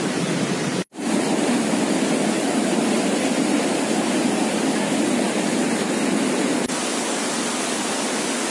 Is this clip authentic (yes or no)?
yes